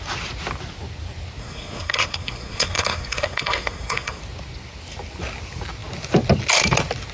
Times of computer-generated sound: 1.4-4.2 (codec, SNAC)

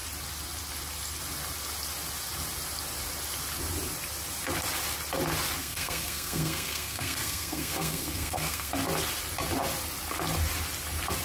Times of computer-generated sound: 5.6-8.7 (codec, SNAC)

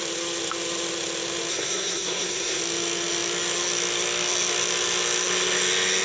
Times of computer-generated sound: 1.5-2.6 (codec, SNAC)

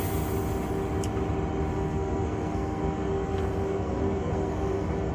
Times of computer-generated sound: 1.7-5.1 (codec, SNAC)

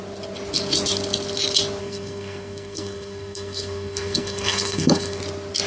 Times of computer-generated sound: 1.8-5.2 (codec, SNAC)

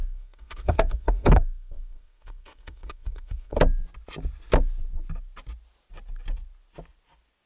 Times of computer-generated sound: 0.0-3.6 (codec, SNAC)

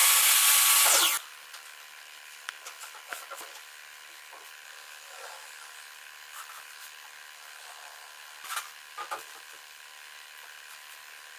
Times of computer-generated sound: none

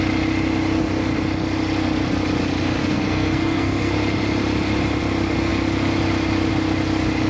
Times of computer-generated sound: 2.8-3.9 (codec, SNAC)